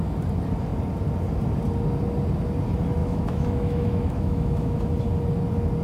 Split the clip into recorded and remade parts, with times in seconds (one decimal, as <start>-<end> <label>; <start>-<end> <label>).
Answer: 0.0-3.0 recorded; 3.0-4.9 remade; 4.9-5.8 recorded